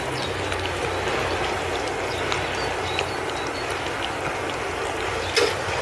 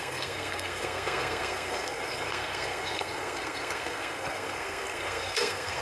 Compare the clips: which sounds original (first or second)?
first